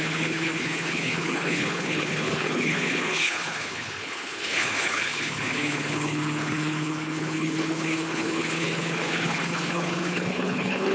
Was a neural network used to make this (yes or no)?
yes